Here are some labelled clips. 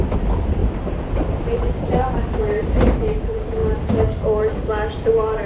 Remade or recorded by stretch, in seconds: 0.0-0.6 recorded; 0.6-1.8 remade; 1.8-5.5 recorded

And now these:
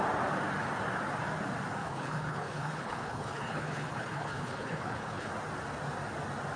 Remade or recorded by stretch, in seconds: 0.0-1.8 recorded; 1.8-5.3 remade; 5.3-6.6 recorded

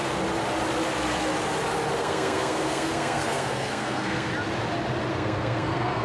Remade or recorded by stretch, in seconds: 0.0-2.0 recorded; 2.0-4.3 remade; 4.3-5.1 recorded; 5.1-6.0 remade

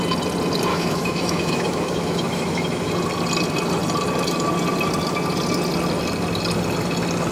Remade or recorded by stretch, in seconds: 0.0-0.7 recorded; 0.7-2.9 remade; 2.9-7.3 recorded